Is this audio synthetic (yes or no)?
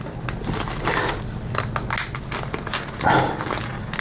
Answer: no